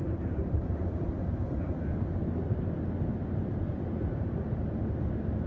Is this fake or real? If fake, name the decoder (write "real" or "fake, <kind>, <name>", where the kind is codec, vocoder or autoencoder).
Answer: real